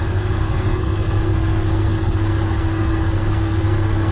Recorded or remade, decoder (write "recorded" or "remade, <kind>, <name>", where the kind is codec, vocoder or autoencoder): remade, codec, SNAC